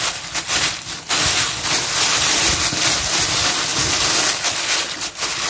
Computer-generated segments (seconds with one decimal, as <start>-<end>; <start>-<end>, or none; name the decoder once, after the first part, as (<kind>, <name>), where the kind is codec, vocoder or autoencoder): none